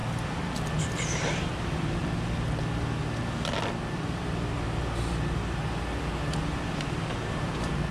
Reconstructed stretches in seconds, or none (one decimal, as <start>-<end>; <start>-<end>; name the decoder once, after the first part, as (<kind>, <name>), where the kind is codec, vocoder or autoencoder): 0.8-2.0 (vocoder, BigVGAN v2); 6.7-7.9